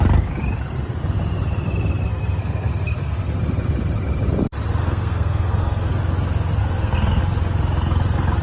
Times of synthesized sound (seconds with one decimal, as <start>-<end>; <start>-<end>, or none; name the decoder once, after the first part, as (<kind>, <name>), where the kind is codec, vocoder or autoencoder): 2.1-3.4 (codec, SNAC); 4.8-5.9; 6.6-7.2